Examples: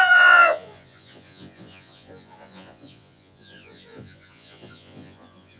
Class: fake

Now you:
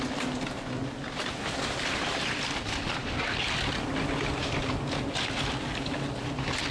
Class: real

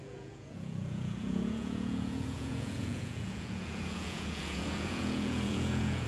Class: fake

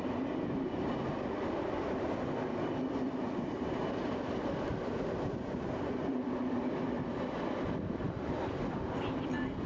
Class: fake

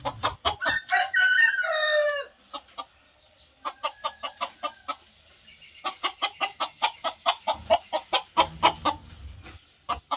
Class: real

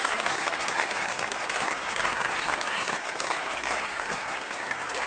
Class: fake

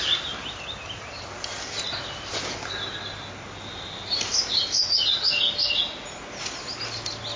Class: real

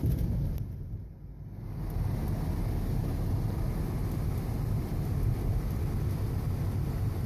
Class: real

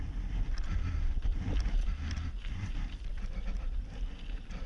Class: real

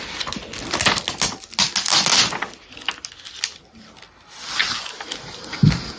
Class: real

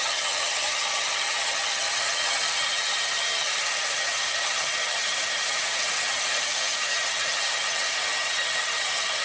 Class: fake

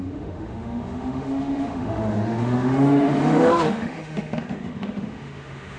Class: fake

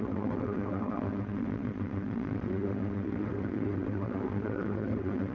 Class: fake